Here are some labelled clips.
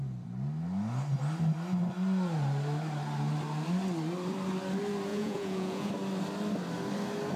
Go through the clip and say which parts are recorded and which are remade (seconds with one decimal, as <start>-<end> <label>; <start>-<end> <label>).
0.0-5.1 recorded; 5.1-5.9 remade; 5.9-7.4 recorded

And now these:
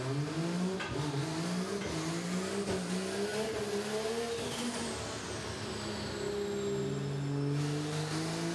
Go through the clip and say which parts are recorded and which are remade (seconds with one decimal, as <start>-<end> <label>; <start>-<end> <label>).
0.0-8.5 recorded

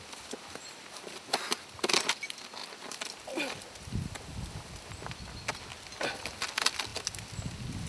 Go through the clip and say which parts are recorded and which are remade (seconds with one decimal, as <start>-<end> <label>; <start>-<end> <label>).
0.0-7.9 recorded

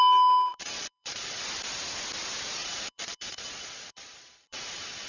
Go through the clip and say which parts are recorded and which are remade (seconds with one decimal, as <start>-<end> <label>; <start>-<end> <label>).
0.0-0.5 recorded; 0.5-1.4 remade; 1.4-2.6 recorded; 2.6-5.1 remade

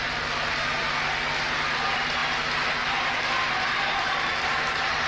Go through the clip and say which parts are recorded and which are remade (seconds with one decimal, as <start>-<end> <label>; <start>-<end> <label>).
0.0-5.1 recorded

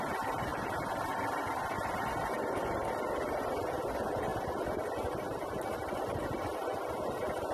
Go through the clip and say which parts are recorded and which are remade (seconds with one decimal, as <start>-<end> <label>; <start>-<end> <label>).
0.0-7.5 recorded